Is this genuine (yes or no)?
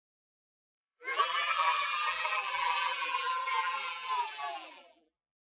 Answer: no